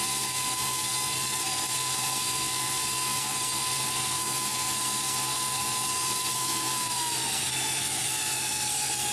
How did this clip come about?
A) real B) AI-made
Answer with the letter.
B